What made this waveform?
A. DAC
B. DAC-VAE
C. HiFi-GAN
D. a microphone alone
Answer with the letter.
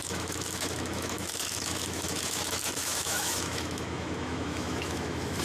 B